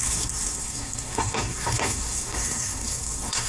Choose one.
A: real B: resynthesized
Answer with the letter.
B